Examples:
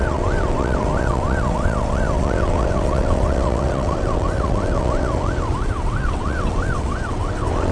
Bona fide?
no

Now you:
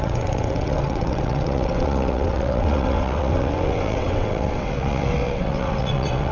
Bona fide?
no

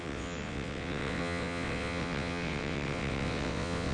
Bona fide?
no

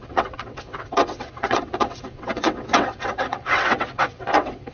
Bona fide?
no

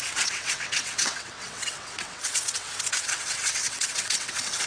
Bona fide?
no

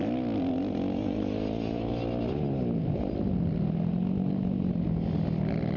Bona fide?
yes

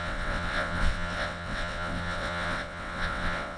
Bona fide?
no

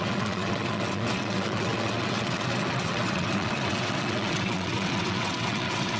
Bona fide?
no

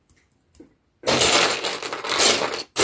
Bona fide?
yes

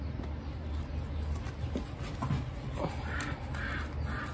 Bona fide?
yes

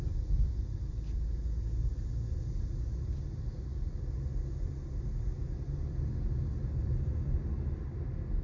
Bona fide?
yes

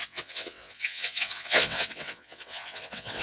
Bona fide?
no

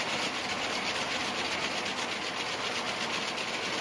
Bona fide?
yes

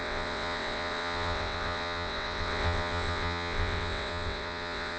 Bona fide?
no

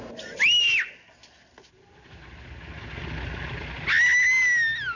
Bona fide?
yes